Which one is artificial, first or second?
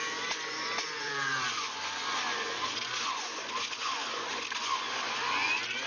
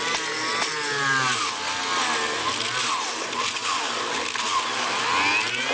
first